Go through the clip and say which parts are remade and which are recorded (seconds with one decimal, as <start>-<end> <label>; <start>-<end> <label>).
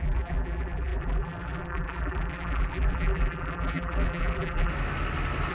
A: 0.0-4.7 remade; 4.7-5.5 recorded